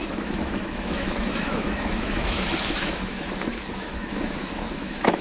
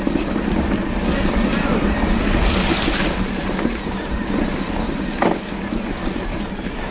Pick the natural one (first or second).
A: second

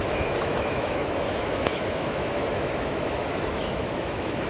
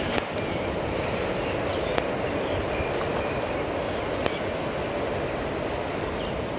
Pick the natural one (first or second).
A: second